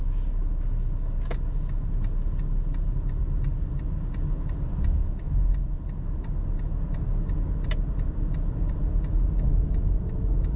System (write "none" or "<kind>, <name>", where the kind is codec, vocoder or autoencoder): none